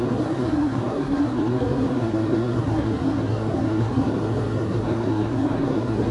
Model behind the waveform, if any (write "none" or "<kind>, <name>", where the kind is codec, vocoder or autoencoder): codec, SNAC